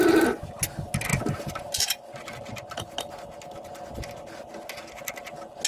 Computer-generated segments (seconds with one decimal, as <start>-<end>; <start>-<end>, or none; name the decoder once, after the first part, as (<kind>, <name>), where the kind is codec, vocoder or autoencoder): 1.1-1.8 (vocoder, BigVGAN v2)